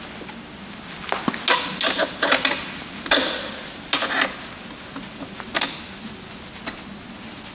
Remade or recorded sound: recorded